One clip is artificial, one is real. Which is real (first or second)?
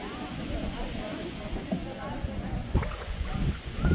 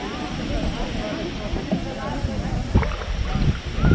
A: second